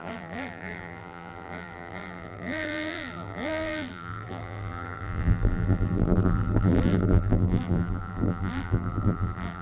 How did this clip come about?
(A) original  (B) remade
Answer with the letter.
B